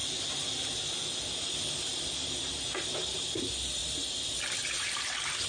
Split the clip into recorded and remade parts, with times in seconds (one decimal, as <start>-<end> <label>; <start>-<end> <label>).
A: 0.0-5.5 recorded